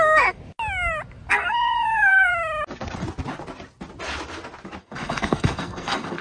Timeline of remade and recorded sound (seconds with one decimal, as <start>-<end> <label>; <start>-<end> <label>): 0.0-0.4 remade; 0.4-1.3 recorded; 1.3-2.3 remade; 2.3-4.8 recorded; 4.8-6.2 remade